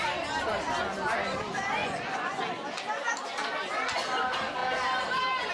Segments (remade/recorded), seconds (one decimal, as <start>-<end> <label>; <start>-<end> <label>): 0.0-1.8 recorded; 1.8-2.4 remade; 2.4-5.5 recorded